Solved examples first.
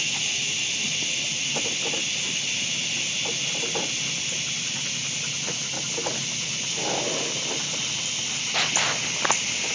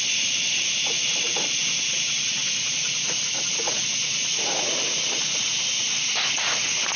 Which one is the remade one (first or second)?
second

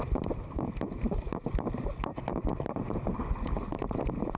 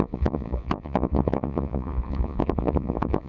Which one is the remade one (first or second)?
second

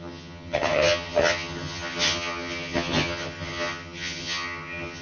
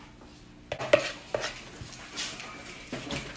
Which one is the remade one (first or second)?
first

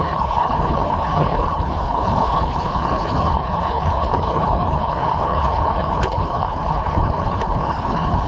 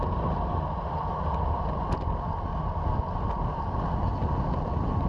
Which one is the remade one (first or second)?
first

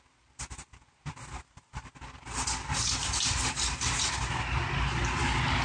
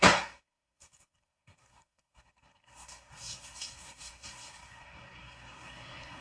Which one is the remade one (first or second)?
second